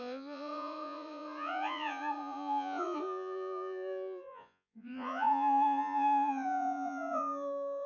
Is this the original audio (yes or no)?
no